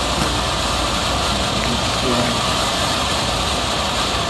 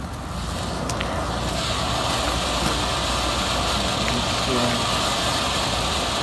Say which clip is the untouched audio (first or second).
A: second